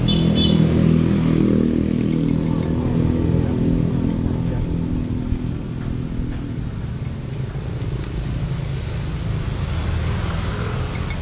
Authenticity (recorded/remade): recorded